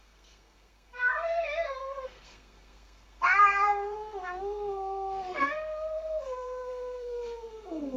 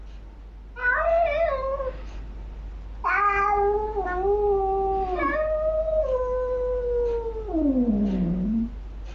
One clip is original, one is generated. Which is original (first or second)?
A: second